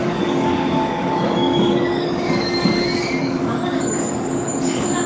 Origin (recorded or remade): remade